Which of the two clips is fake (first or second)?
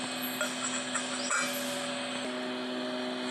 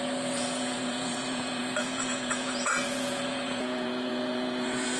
second